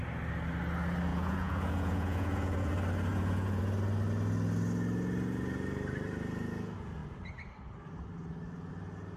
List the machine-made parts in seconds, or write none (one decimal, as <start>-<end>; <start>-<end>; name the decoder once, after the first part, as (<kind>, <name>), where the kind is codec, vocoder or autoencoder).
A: 1.1-2.7 (vocoder, Vocos); 3.1-3.6